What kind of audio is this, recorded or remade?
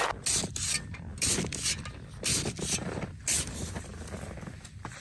recorded